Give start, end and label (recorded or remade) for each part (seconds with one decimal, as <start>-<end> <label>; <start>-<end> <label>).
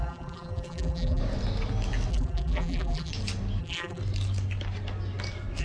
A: 0.0-1.2 remade; 1.2-2.1 recorded; 2.1-3.1 remade; 3.1-3.6 recorded; 3.6-4.0 remade; 4.0-5.6 recorded